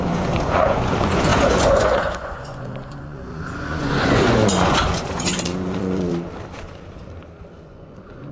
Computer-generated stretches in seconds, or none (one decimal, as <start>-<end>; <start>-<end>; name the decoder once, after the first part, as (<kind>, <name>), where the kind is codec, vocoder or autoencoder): 0.0-6.1 (vocoder, Vocos); 7.6-8.3